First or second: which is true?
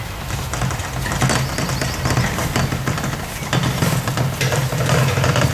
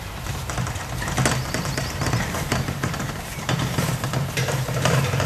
first